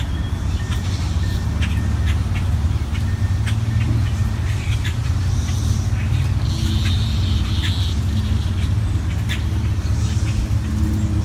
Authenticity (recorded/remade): recorded